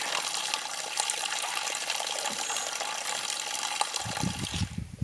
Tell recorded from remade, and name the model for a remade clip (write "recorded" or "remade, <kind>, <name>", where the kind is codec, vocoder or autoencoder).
recorded